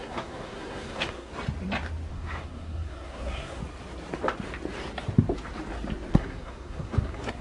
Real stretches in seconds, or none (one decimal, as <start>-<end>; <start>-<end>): 1.3-2.1; 3.6-6.1